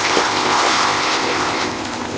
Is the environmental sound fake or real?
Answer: fake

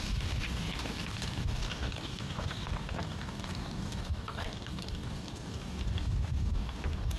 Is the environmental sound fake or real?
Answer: fake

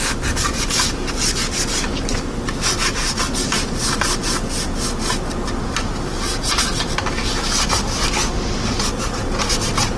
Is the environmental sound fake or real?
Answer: real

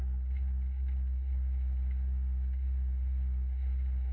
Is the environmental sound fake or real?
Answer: real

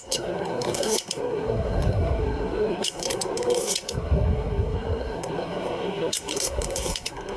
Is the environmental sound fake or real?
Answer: fake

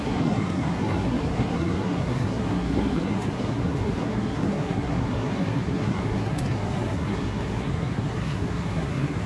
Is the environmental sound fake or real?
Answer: fake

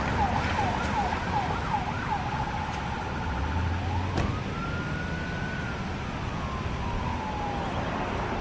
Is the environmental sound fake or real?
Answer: real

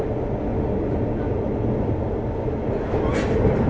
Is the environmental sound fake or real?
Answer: real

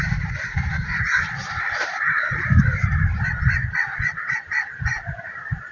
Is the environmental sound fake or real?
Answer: fake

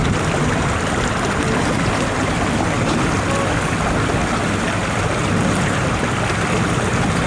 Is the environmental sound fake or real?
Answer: real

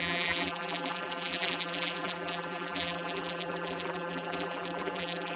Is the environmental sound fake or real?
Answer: fake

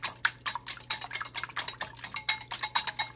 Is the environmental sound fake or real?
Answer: real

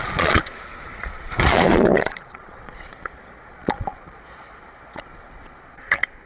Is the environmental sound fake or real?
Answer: fake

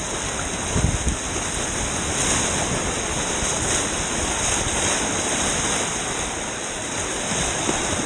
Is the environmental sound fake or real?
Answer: real